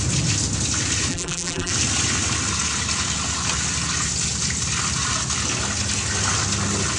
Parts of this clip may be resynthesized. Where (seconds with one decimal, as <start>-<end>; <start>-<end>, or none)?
1.1-1.7